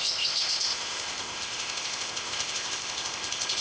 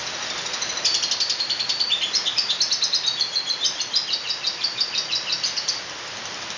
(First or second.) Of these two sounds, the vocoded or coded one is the first